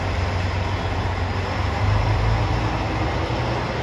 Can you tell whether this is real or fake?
real